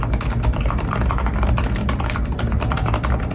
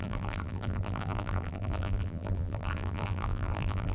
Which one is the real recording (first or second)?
first